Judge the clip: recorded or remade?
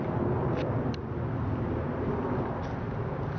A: recorded